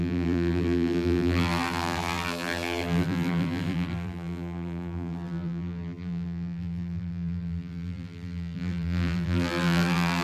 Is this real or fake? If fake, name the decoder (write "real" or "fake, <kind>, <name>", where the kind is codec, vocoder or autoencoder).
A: fake, vocoder, BigVGAN v2